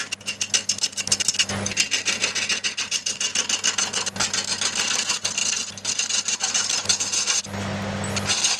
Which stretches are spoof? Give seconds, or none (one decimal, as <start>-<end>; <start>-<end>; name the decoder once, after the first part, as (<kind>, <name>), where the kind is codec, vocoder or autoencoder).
none